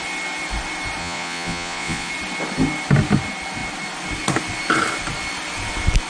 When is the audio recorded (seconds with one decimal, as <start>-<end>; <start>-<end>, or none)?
0.0-1.0; 2.1-6.1